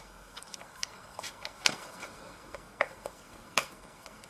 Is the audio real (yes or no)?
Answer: no